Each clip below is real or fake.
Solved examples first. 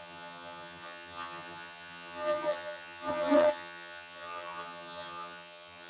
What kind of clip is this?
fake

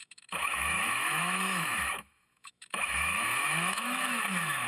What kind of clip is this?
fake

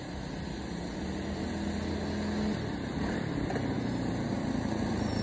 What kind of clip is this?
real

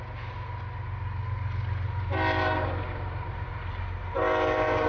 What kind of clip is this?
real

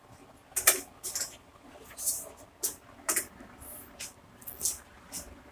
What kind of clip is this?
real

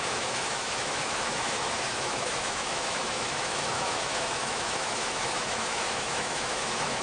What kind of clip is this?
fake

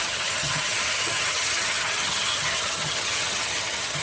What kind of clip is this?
fake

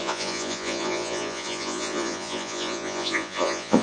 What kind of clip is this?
fake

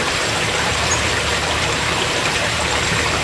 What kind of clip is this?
fake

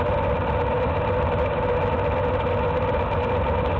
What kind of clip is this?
real